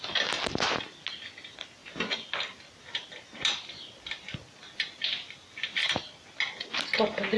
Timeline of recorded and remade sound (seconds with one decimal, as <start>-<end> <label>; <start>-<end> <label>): 0.0-7.4 recorded